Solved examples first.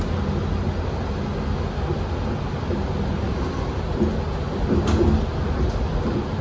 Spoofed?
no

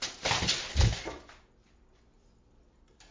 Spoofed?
no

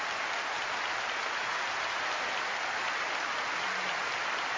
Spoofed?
no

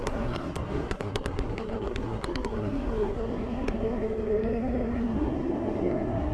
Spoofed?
yes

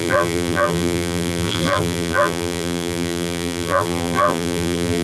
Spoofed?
yes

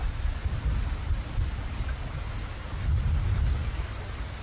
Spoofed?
no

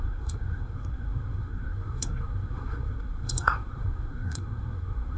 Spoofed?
yes